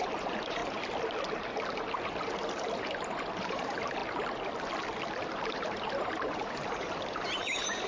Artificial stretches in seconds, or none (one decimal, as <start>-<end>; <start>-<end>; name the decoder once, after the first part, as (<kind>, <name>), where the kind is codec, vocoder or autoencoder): 0.0-0.6 (vocoder, BigVGAN v2); 2.7-4.0; 5.5-7.9